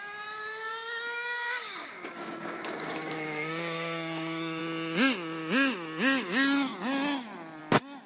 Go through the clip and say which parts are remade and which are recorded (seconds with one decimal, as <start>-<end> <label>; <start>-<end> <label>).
0.0-0.7 recorded; 0.7-4.6 remade; 4.6-8.1 recorded